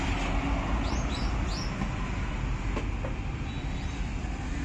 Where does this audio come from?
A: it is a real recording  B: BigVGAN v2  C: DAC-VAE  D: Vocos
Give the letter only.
A